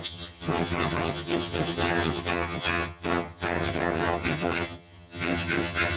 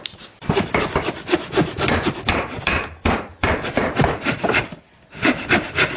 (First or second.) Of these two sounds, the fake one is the first